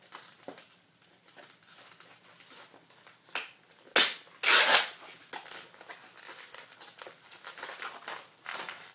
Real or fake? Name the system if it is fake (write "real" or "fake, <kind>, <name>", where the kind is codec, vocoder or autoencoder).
real